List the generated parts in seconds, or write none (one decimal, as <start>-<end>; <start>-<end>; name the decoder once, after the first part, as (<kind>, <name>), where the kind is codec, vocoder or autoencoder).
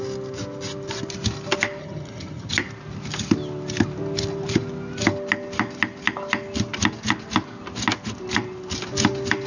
1.8-2.5 (vocoder, HiFi-GAN)